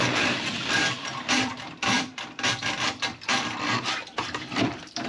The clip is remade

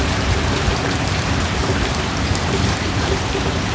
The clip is remade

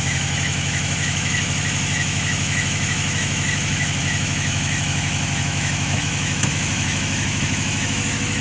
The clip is remade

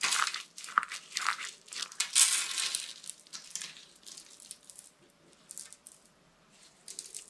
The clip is recorded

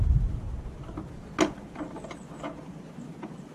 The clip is recorded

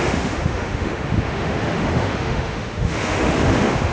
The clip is remade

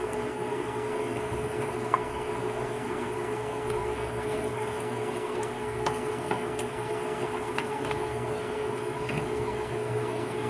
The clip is remade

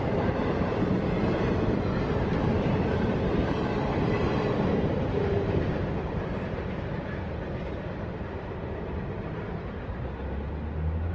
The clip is recorded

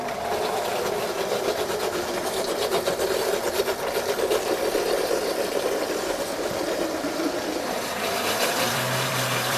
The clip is remade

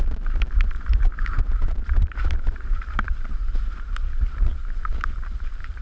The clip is remade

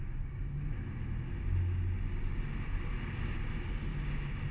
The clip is recorded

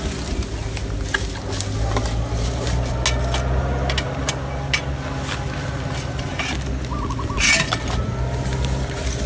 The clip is recorded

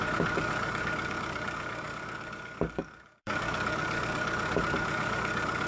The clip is remade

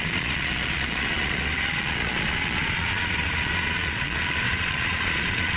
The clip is remade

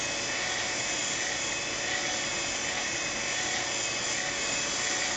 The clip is recorded